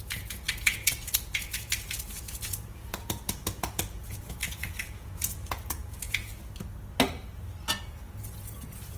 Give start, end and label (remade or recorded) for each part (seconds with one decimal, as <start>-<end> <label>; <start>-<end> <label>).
0.0-6.3 remade; 6.3-7.8 recorded; 7.8-9.0 remade